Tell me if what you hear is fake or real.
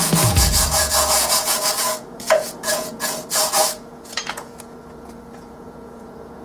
fake